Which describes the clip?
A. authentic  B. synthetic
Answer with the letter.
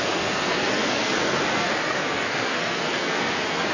B